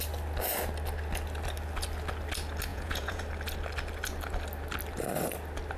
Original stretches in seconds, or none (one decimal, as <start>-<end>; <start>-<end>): 0.0-2.7; 3.2-5.8